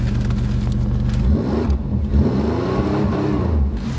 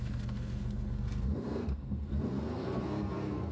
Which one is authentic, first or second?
first